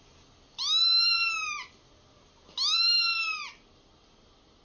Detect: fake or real real